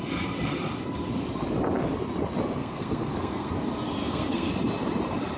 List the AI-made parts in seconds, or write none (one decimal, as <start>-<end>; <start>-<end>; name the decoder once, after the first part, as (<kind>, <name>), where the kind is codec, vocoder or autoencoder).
2.6-3.5 (codec, SNAC); 4.0-4.5